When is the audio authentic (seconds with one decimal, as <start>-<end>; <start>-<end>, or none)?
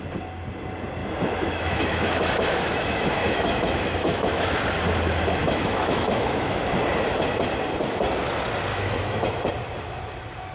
0.0-1.0; 4.6-5.4; 6.6-8.7; 9.5-10.5